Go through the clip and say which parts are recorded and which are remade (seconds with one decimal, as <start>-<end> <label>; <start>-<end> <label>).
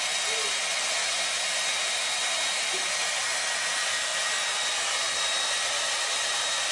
0.0-6.7 recorded